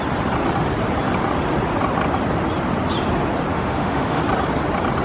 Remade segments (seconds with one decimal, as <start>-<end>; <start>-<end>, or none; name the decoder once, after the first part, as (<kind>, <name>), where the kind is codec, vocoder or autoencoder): 3.5-4.2 (autoencoder, DAC-VAE)